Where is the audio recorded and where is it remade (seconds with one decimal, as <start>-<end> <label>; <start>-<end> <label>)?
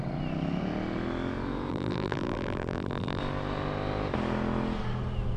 0.0-1.7 recorded; 1.7-3.2 remade; 3.2-5.4 recorded